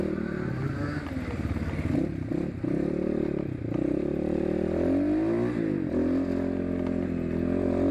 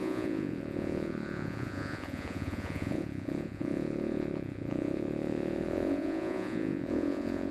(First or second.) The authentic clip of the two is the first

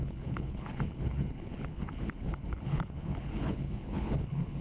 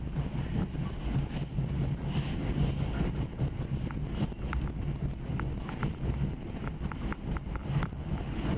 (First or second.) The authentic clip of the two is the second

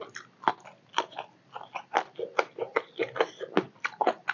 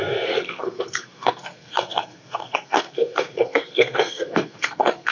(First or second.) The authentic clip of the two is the first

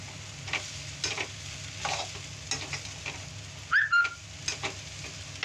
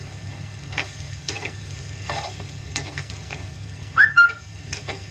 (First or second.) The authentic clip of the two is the first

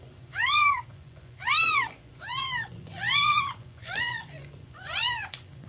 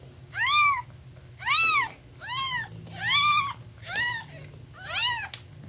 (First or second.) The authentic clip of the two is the second